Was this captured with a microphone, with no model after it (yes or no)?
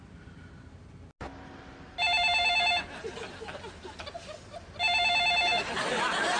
yes